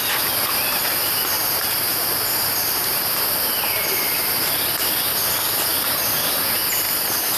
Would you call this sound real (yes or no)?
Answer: yes